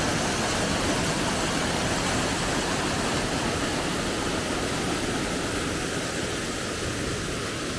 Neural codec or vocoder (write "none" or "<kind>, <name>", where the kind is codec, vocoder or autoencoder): none